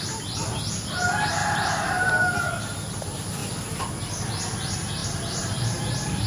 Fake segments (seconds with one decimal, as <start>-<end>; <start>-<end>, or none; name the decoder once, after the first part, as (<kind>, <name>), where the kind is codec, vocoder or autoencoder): 1.4-2.1 (vocoder, BigVGAN v2); 5.0-6.3